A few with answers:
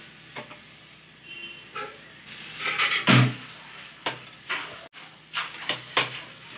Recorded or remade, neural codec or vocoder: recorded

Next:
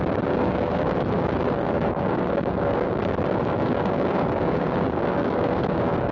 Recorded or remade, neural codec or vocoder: remade, codec, DAC